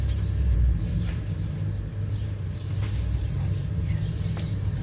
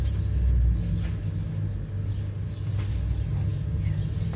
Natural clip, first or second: second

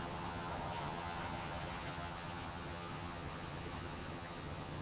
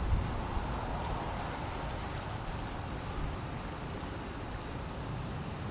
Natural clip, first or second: second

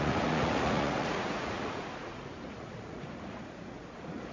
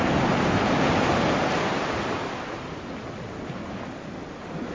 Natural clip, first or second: second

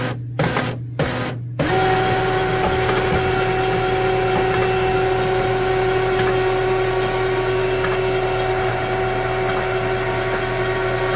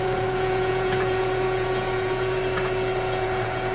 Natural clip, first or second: first